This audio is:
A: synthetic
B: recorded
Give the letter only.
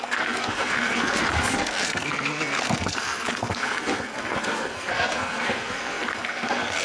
A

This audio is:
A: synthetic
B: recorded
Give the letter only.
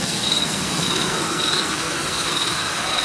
A